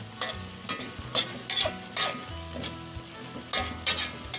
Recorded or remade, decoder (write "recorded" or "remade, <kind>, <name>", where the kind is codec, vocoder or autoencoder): recorded